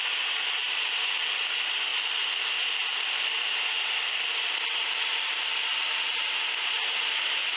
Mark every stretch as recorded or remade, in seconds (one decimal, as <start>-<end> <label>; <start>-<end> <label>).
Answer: 0.0-7.6 recorded